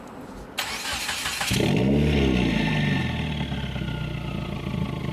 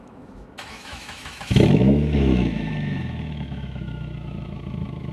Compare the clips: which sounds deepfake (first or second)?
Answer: second